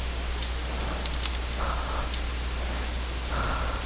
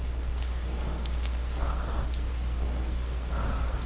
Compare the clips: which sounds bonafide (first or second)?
first